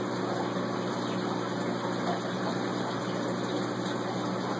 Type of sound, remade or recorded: recorded